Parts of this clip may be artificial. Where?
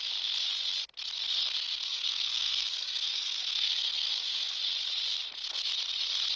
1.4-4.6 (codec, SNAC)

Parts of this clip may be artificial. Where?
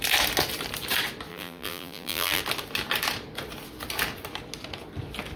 1.3-2.4 (vocoder, BigVGAN v2)